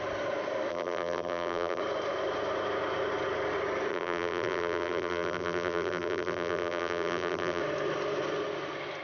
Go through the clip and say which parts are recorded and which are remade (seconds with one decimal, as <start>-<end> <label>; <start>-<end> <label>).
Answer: 0.0-0.7 recorded; 0.7-1.8 remade; 1.8-3.9 recorded; 3.9-7.6 remade; 7.6-9.0 recorded